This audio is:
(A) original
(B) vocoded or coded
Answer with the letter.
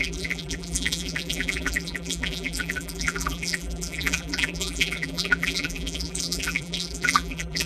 B